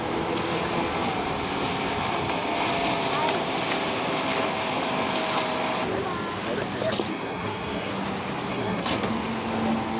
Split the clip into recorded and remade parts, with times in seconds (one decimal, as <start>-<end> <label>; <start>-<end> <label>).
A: 0.0-7.1 recorded; 7.1-7.9 remade; 7.9-8.5 recorded; 8.5-9.1 remade; 9.1-10.0 recorded